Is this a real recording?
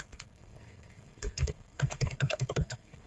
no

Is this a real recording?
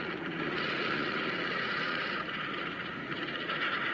no